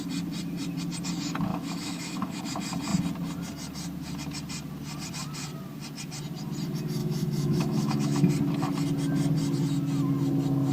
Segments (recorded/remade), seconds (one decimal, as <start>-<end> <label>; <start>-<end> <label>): 0.0-1.5 recorded; 1.5-2.4 remade; 2.4-7.0 recorded; 7.0-8.3 remade; 8.3-10.7 recorded